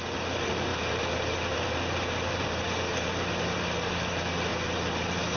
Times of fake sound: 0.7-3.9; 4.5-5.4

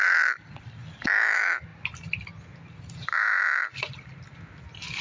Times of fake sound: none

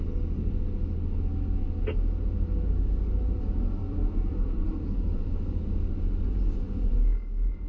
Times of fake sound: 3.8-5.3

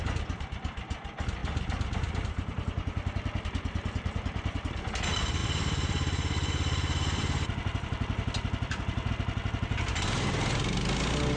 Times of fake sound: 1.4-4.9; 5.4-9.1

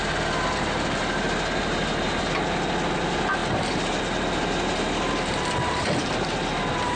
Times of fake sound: none

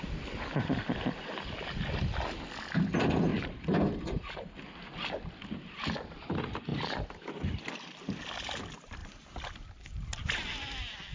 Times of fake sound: 3.3-4.6; 6.7-7.3; 9.0-11.1

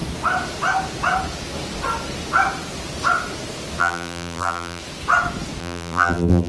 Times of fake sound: 3.8-4.8; 5.6-6.5

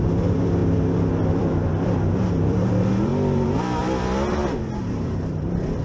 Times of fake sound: 0.0-0.6; 1.3-3.1; 4.8-5.8